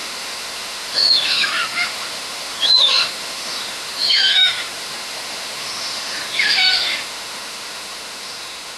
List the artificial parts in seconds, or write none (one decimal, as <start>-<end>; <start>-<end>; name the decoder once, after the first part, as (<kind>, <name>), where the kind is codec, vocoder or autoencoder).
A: 0.0-8.8 (autoencoder, DAC-VAE)